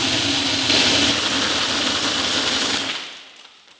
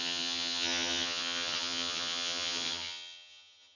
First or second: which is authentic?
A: first